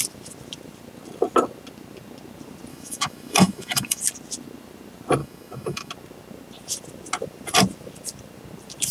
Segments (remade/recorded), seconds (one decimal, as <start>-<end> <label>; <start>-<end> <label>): 0.0-2.7 recorded; 2.7-4.0 remade; 4.0-5.2 recorded; 5.2-5.9 remade; 5.9-8.9 recorded